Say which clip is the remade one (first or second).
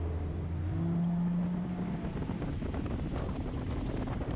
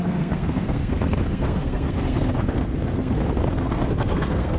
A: second